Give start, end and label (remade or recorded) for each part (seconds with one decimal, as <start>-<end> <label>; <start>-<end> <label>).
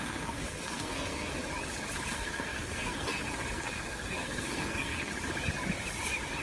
0.0-1.4 remade; 1.4-2.1 recorded; 2.1-5.1 remade; 5.1-6.4 recorded